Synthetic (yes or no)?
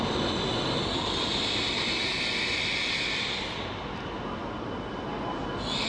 no